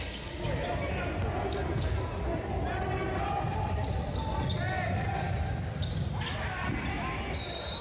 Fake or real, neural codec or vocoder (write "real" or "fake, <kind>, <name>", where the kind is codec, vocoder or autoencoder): real